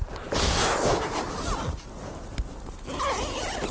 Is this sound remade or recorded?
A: recorded